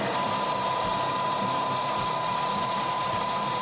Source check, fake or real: fake